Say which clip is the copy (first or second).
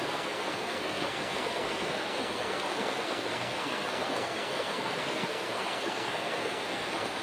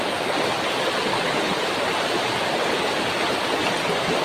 first